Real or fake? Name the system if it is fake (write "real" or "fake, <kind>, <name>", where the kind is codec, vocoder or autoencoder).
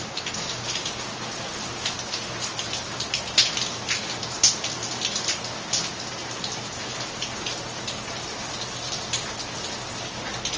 real